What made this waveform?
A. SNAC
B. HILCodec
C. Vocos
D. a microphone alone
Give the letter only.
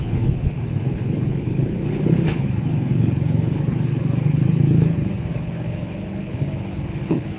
B